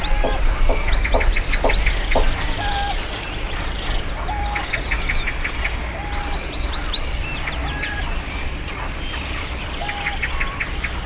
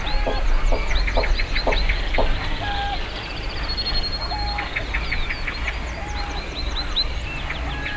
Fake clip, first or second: first